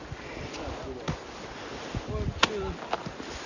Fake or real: real